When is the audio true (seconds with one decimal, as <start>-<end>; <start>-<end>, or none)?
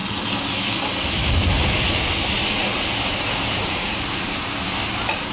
0.0-2.6; 4.4-5.3